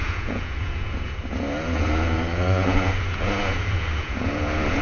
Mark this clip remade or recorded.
remade